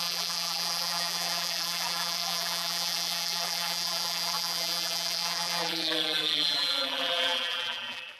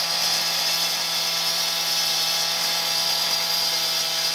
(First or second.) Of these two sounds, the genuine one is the second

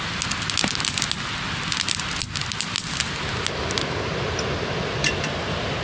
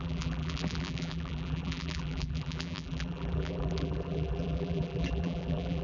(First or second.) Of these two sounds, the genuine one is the first